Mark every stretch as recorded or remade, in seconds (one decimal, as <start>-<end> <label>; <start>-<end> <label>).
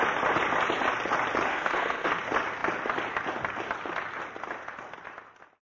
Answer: 0.0-1.5 recorded; 1.5-2.1 remade; 2.1-5.7 recorded